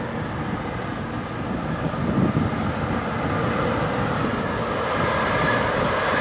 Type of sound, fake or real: real